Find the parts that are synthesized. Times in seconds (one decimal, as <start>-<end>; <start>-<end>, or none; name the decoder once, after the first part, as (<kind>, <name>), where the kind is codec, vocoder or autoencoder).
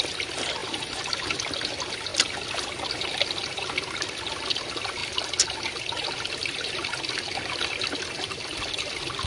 0.6-1.4 (vocoder, BigVGAN v2)